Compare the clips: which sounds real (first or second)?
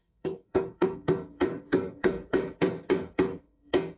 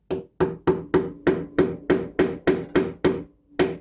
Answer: second